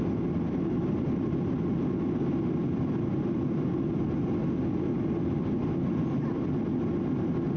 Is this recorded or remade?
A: recorded